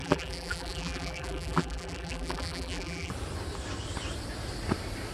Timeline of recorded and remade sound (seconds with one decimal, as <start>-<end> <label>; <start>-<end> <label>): 0.0-3.1 remade; 3.1-5.1 recorded